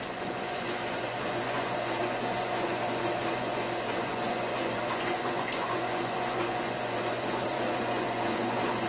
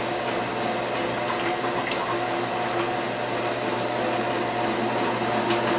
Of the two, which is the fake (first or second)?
first